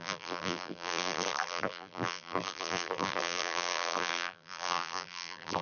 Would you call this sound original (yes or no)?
no